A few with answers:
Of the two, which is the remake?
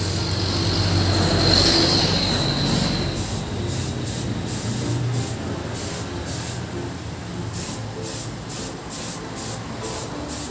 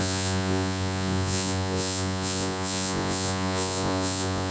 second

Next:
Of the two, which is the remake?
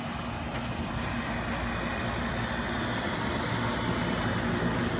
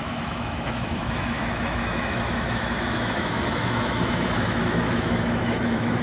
second